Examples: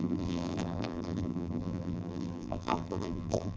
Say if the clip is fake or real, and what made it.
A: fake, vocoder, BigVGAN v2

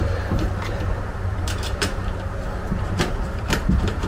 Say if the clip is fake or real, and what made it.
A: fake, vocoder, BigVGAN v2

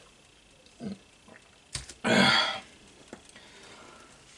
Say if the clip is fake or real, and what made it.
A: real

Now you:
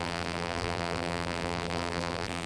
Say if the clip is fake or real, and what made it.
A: fake, vocoder, BigVGAN v2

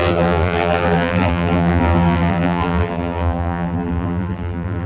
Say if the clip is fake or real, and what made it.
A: fake, vocoder, BigVGAN v2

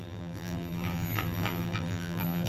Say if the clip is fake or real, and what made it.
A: fake, vocoder, BigVGAN v2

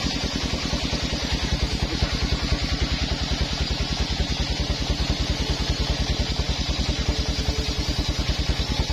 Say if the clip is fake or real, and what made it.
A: real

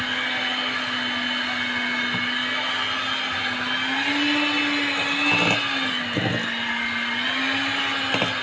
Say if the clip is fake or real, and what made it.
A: real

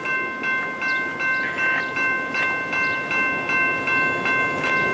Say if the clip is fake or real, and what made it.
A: real